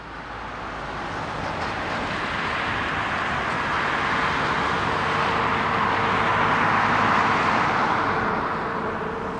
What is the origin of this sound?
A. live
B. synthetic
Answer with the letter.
A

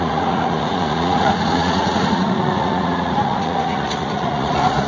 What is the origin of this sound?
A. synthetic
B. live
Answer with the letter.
A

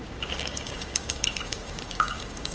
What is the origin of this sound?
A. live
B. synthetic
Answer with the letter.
B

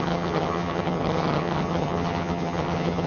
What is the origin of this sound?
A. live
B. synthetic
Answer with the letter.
B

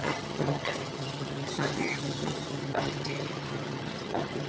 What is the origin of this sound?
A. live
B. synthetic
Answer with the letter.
B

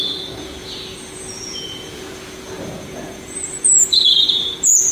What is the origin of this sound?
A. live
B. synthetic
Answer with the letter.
B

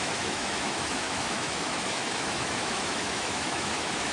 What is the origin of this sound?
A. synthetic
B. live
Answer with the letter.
A